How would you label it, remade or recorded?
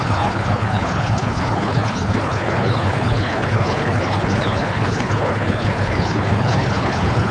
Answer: remade